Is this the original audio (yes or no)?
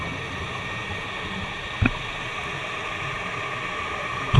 yes